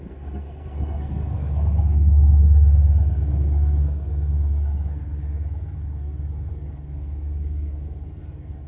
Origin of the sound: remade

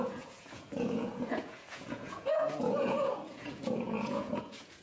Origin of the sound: remade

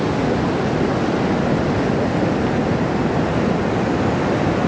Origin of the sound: recorded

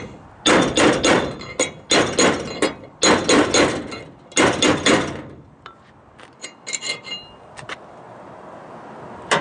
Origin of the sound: recorded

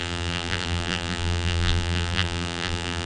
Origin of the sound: remade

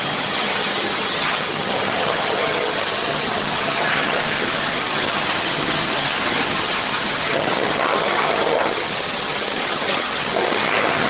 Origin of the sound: remade